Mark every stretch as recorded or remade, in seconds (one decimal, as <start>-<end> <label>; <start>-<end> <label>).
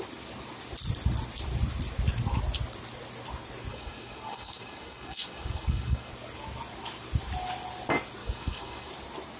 0.0-3.7 recorded; 3.7-6.1 remade; 6.1-8.2 recorded; 8.2-8.9 remade; 8.9-9.4 recorded